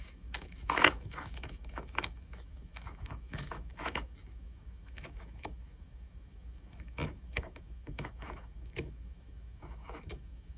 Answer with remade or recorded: remade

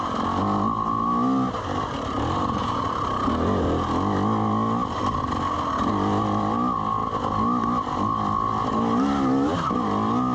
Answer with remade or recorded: recorded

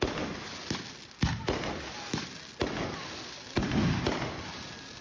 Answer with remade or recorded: recorded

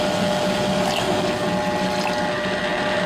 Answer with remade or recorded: recorded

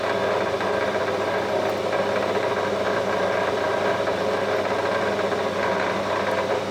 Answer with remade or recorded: recorded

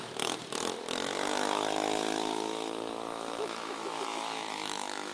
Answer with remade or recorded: remade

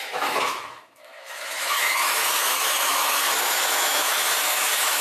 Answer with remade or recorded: remade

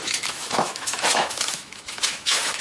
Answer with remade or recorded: remade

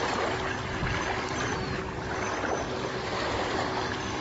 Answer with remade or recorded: recorded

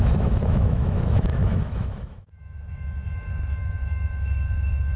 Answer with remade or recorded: remade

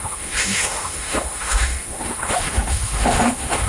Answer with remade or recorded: remade